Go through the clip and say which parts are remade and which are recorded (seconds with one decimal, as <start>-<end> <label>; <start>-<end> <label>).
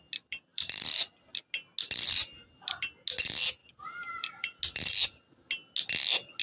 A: 0.0-0.5 recorded; 0.5-1.1 remade; 1.1-3.6 recorded; 3.6-4.6 remade; 4.6-6.4 recorded